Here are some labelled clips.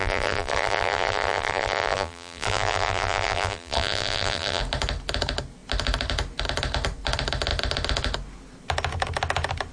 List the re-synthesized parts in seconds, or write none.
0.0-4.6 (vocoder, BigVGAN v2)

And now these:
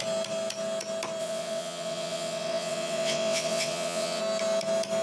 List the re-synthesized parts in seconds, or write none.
1.2-4.2 (vocoder, WaveNeXt)